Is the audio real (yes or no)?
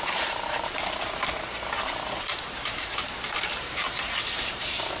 no